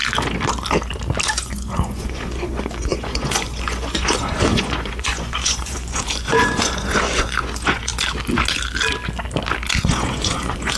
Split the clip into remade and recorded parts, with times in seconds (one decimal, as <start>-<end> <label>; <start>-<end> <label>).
0.0-1.3 recorded; 1.3-7.9 remade; 7.9-9.8 recorded; 9.8-10.8 remade